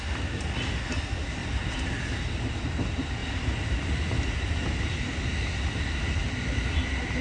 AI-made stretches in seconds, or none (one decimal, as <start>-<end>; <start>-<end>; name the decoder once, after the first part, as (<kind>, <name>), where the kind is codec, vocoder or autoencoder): 1.4-1.9 (vocoder, BigVGAN v2)